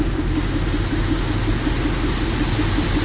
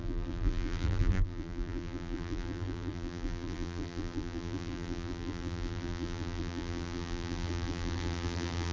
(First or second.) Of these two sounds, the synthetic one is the second